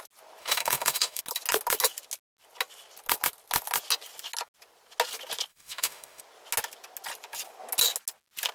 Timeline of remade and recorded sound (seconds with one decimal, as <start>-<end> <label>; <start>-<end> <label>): 0.0-0.4 recorded; 0.4-1.2 remade; 1.2-5.5 recorded; 5.5-6.2 remade; 6.2-8.5 recorded